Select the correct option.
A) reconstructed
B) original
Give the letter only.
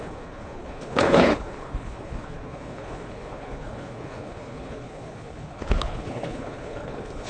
A